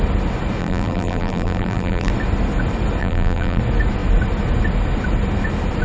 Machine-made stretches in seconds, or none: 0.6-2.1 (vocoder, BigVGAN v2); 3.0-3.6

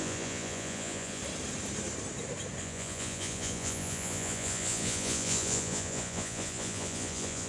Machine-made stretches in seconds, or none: 0.0-1.2 (vocoder, Vocos); 2.6-7.5

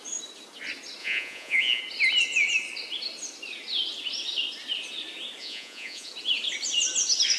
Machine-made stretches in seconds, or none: 1.0-1.8 (vocoder, Vocos); 5.4-6.1

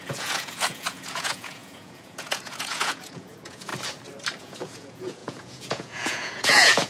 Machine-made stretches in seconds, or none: 0.0-3.7 (vocoder, Vocos); 4.4-6.9

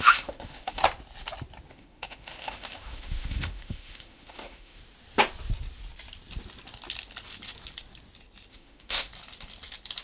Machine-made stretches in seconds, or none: 0.0-0.8 (autoencoder, DAC-VAE); 1.7-4.8; 8.5-9.1

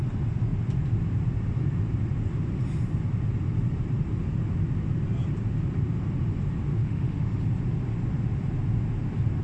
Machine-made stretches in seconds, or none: 6.7-7.4 (autoencoder, DAC-VAE)